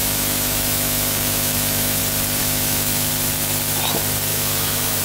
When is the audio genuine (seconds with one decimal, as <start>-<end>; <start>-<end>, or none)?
2.0-2.4; 3.1-4.3